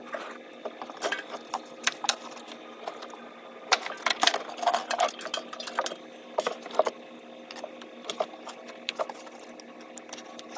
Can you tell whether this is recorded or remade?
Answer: recorded